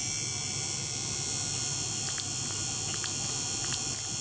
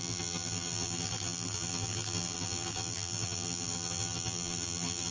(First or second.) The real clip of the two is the first